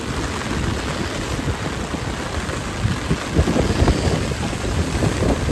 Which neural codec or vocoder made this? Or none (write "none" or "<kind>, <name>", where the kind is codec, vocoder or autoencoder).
none